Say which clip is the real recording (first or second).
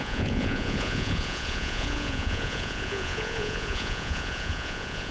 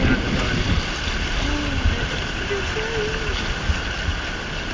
second